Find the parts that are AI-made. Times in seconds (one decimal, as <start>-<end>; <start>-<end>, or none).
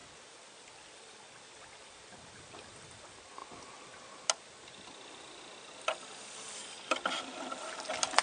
1.7-3.4; 6.6-8.2